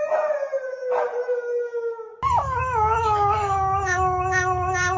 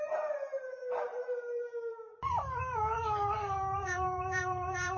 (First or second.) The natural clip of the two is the first